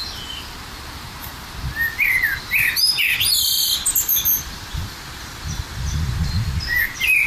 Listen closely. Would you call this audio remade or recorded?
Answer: recorded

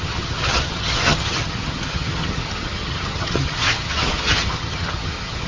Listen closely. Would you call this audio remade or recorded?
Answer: remade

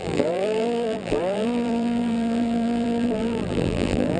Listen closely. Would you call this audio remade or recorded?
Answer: remade